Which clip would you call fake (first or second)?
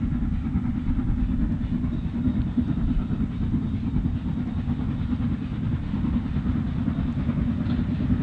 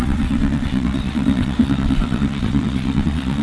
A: second